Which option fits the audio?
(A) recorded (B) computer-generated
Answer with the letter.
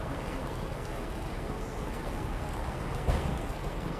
B